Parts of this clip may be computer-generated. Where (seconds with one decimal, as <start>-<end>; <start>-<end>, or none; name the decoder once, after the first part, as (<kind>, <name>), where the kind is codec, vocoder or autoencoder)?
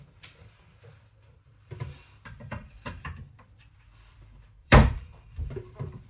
1.5-3.8 (vocoder, BigVGAN v2); 4.6-6.1